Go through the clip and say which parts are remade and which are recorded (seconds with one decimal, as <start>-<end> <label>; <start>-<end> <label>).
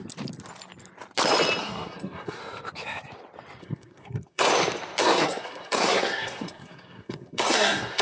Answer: 0.0-1.6 recorded; 1.6-2.4 remade; 2.4-3.6 recorded; 3.6-4.5 remade; 4.5-5.0 recorded; 5.0-8.0 remade